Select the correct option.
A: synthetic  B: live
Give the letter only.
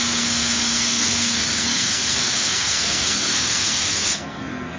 A